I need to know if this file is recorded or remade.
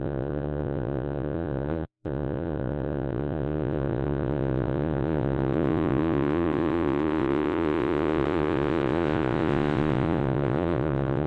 remade